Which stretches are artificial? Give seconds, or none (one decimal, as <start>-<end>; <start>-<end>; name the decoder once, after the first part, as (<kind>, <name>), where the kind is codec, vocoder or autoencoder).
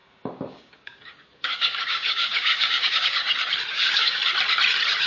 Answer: 0.0-3.2 (codec, DAC); 3.7-4.2